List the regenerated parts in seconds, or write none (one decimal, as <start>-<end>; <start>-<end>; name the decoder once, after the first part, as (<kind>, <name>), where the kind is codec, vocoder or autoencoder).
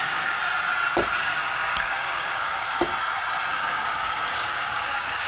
0.0-0.4 (codec, DAC); 1.2-2.9; 3.5-5.3